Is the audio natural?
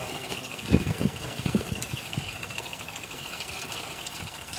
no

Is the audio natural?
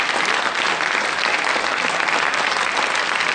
yes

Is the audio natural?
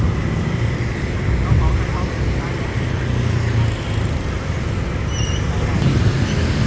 yes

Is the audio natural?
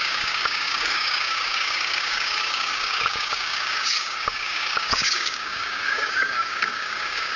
no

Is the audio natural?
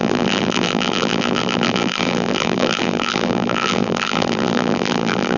no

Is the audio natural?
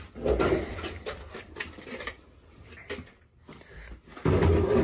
no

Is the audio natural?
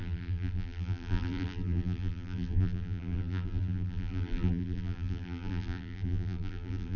no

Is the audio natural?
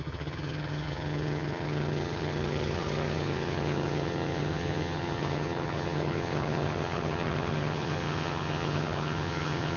no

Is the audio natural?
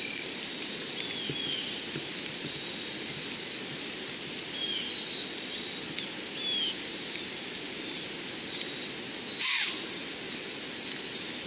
yes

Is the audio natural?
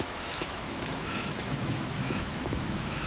no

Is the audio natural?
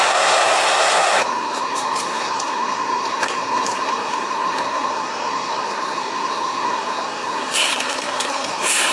no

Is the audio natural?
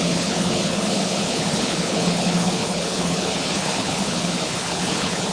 no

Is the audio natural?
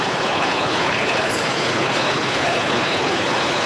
no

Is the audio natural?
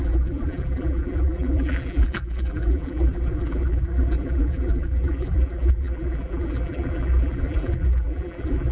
no